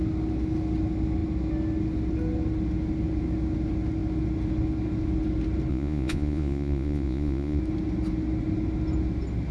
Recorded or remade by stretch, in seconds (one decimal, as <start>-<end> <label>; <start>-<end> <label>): 0.0-5.7 recorded; 5.7-7.6 remade; 7.6-9.5 recorded